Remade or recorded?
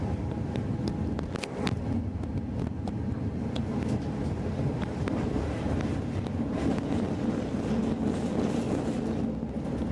recorded